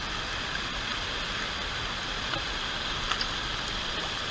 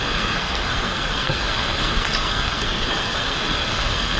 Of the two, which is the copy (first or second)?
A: second